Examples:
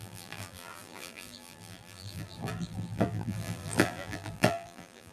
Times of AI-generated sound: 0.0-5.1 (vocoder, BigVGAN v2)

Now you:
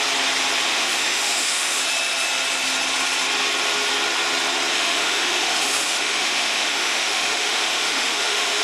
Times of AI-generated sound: 0.7-1.8 (autoencoder, DAC-VAE); 4.7-8.6

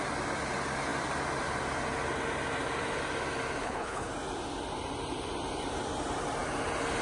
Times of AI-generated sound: 3.6-4.1 (codec, HILCodec)

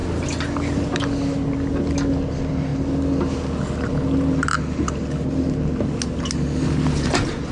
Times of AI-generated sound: none

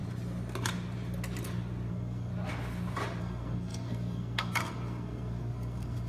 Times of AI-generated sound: 1.9-2.3 (codec, SNAC); 3.2-6.1

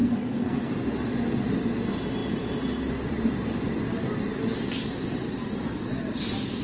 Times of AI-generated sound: 0.0-0.7 (codec, SNAC)

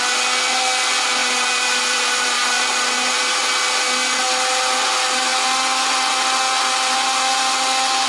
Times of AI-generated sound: 1.2-3.4 (vocoder, BigVGAN v2)